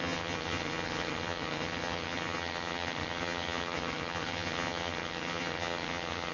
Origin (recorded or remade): remade